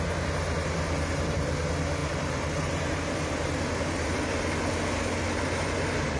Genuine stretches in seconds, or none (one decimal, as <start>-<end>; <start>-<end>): 0.0-2.0; 4.2-6.2